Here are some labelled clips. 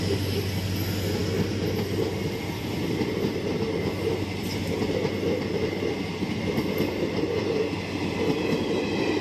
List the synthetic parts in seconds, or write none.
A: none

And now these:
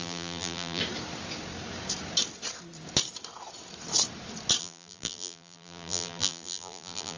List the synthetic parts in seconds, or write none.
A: 0.0-0.8 (vocoder, BigVGAN v2); 4.6-7.2

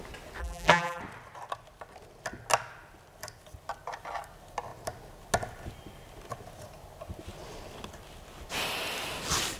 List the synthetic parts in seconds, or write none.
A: 0.4-1.0 (vocoder, BigVGAN v2)

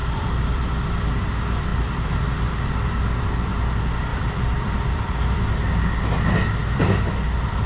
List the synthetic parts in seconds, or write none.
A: 0.0-1.0 (vocoder, BigVGAN v2); 1.7-2.2; 4.1-5.9

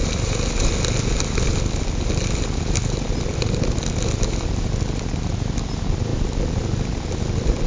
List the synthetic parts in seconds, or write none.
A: none

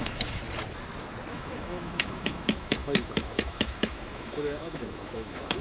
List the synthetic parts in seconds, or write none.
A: 0.0-0.4 (autoencoder, DAC-VAE); 1.3-5.6

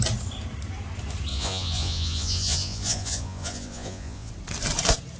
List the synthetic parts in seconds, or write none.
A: 1.3-4.3 (vocoder, Vocos)

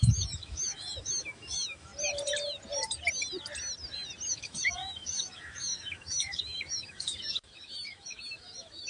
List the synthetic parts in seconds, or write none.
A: 0.0-1.9 (autoencoder, DAC-VAE); 4.3-8.9